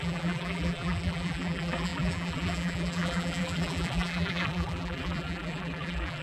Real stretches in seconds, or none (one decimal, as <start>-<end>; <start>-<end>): none